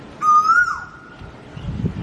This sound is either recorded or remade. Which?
recorded